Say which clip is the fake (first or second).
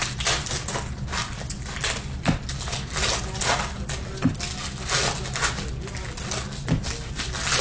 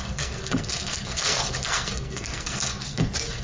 second